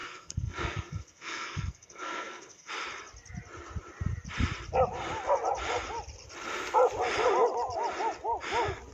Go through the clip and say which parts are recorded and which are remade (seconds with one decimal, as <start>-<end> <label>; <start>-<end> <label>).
0.0-2.7 remade; 2.7-8.9 recorded